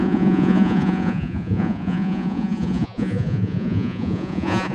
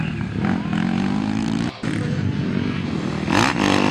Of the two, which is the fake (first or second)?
first